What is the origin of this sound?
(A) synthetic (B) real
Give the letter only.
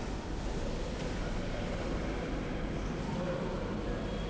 B